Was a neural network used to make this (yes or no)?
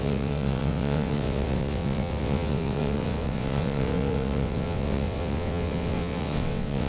yes